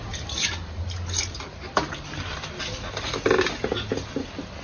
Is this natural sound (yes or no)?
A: yes